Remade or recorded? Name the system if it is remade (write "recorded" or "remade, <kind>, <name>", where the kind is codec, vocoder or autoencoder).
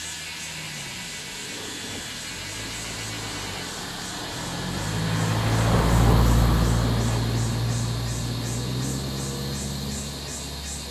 recorded